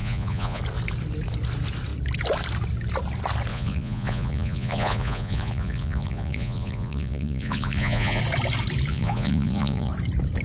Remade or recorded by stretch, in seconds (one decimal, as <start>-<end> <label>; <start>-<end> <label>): 0.0-0.6 remade; 0.6-3.5 recorded; 3.5-8.2 remade; 8.2-8.9 recorded; 8.9-9.9 remade; 9.9-10.4 recorded